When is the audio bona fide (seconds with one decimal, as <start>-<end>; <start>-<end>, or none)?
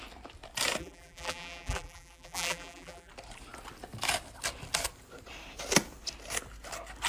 0.0-0.8; 3.1-7.1